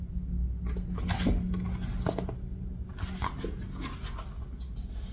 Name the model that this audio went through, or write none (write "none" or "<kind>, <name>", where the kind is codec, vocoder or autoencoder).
none